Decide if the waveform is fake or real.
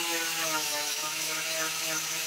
fake